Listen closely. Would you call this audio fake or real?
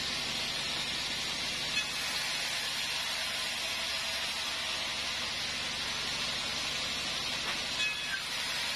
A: real